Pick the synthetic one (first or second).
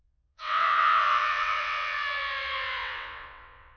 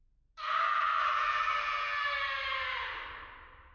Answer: first